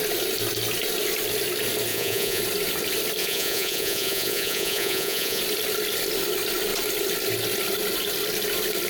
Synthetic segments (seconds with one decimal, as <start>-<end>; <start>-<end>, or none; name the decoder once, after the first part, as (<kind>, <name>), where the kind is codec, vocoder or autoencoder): 1.9-2.4 (vocoder, Vocos); 3.2-5.4